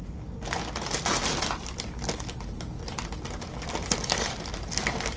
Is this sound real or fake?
real